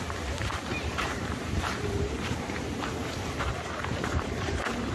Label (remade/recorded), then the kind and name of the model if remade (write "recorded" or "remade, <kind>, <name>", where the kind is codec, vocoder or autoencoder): remade, vocoder, BigVGAN v2